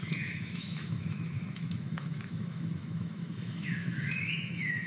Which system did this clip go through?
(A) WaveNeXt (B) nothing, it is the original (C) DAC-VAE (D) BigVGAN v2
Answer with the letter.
C